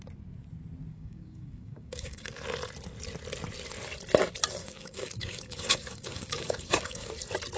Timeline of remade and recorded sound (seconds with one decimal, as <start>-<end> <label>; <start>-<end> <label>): 0.0-0.9 recorded; 0.9-2.4 remade; 2.4-4.6 recorded; 4.6-7.1 remade; 7.1-7.6 recorded